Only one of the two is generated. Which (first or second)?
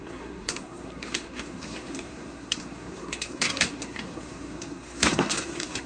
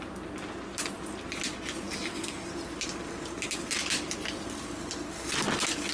first